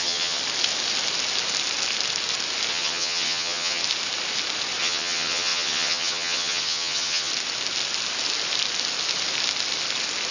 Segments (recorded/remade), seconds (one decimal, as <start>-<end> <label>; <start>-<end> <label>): 0.0-0.4 remade; 0.4-2.7 recorded; 2.7-3.8 remade; 3.8-4.8 recorded; 4.8-7.3 remade; 7.3-10.3 recorded